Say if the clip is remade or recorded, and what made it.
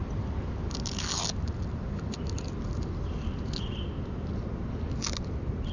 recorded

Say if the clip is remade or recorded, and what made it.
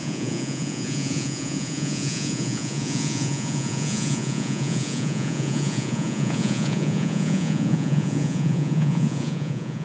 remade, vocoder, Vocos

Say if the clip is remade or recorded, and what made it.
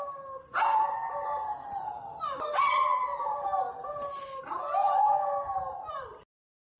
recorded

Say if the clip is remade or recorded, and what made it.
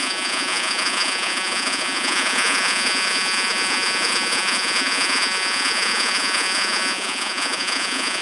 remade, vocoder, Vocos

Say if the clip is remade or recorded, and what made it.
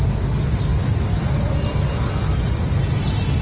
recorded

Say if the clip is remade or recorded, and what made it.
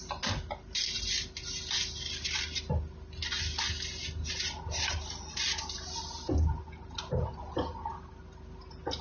recorded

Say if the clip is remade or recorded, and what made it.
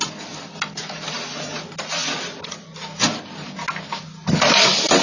recorded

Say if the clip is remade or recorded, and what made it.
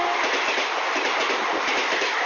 recorded